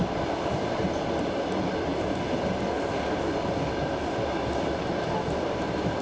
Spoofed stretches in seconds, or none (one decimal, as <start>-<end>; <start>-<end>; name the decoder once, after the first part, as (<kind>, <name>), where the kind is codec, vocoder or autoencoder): none